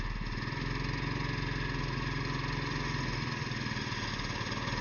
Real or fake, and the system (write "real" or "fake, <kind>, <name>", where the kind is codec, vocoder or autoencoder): real